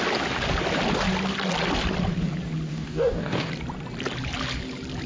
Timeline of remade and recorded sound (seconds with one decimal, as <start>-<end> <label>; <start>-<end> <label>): 0.0-2.7 recorded; 2.7-3.5 remade; 3.5-5.1 recorded